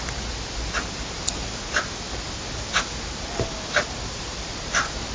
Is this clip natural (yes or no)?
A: yes